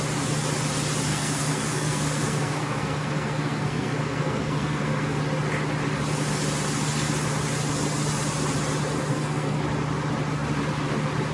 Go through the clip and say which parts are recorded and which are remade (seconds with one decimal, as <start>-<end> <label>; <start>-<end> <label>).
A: 0.0-1.1 recorded; 1.1-5.2 remade; 5.2-9.1 recorded; 9.1-9.6 remade; 9.6-11.3 recorded